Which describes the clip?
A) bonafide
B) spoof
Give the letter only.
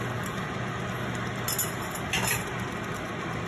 A